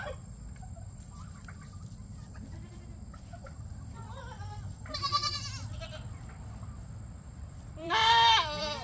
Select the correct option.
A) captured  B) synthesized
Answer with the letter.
B